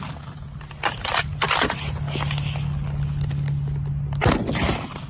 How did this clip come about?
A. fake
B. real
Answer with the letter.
B